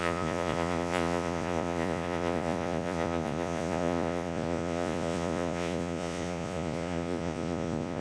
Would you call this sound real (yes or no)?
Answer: no